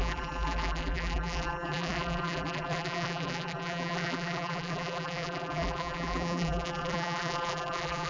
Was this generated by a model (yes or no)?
yes